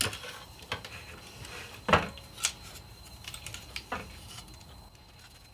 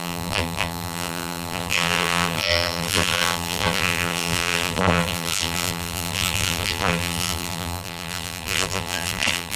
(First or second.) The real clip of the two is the first